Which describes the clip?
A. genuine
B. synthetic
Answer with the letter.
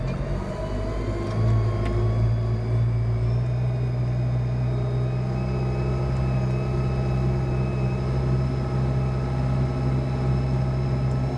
A